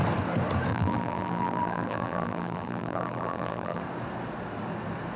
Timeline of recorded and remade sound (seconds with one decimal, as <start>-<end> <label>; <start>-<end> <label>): 0.0-0.7 recorded; 0.7-3.8 remade; 3.8-5.2 recorded